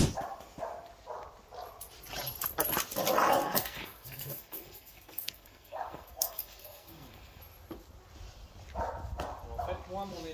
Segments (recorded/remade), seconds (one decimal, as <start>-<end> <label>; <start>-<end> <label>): 0.0-3.4 recorded; 3.4-7.4 remade; 7.4-10.3 recorded